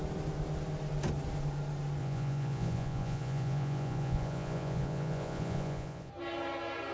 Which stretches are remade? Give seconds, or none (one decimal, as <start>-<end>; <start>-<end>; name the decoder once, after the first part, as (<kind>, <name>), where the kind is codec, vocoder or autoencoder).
2.0-6.1 (vocoder, Vocos)